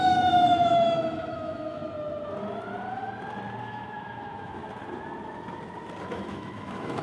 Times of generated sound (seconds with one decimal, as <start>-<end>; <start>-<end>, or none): 0.0-1.8; 3.6-4.6; 6.0-7.0